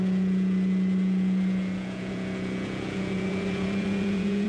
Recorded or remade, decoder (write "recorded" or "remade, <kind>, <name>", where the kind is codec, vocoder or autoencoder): remade, vocoder, Vocos